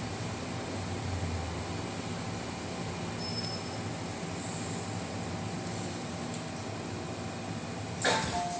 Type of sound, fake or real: real